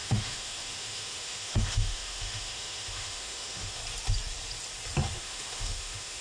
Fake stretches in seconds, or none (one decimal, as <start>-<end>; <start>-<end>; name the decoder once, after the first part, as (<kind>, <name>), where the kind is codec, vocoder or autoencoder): 0.0-3.8 (autoencoder, DAC-VAE); 5.2-6.2